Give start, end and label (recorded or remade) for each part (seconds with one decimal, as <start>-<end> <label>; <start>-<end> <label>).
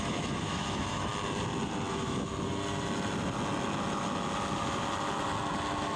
0.0-1.1 remade; 1.1-1.9 recorded; 1.9-2.3 remade; 2.3-6.0 recorded